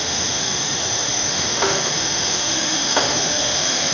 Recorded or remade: remade